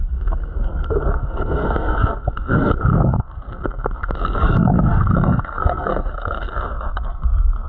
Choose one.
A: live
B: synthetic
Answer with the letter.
B